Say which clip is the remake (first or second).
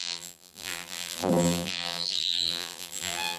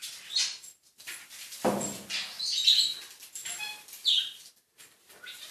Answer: first